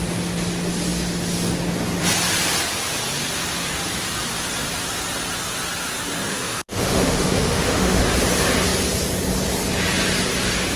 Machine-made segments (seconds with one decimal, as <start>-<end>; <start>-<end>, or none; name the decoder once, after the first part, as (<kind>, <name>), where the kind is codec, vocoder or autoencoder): 6.3-8.0 (autoencoder, DAC-VAE)